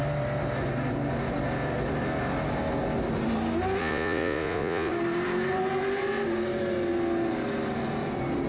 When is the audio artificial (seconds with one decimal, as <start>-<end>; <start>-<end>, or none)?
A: 3.8-4.9